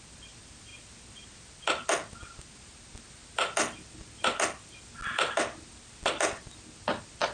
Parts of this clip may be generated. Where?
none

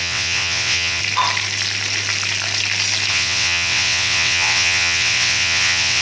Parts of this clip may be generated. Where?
0.0-1.0 (vocoder, WaveNeXt); 3.1-6.0

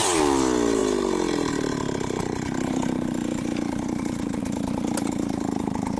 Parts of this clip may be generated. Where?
none

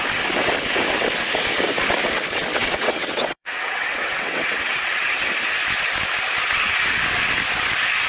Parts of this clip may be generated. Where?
2.6-5.3 (vocoder, WaveNeXt)

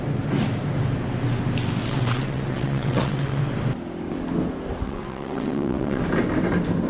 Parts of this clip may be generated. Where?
1.8-3.4 (vocoder, WaveNeXt); 4.8-6.0

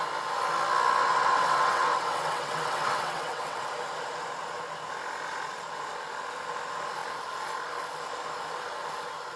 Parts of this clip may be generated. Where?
1.0-3.7 (vocoder, WaveNeXt)